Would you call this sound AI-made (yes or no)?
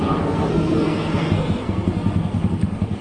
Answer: yes